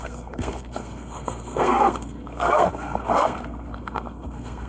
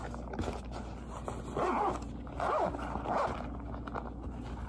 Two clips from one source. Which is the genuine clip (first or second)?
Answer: second